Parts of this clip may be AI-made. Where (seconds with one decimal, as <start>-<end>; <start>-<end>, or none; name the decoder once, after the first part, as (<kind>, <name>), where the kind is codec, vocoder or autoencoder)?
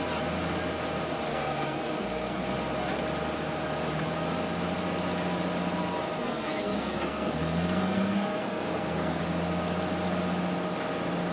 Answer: 1.3-2.4 (codec, SNAC); 6.2-9.2